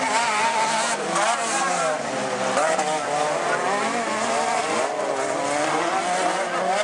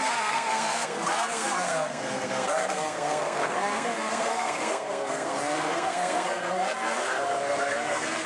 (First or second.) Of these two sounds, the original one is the first